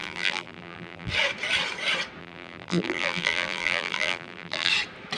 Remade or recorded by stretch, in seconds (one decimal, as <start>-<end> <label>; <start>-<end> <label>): 0.0-1.1 remade; 1.1-2.2 recorded; 2.2-4.7 remade; 4.7-5.2 recorded